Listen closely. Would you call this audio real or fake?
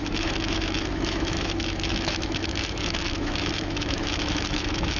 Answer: fake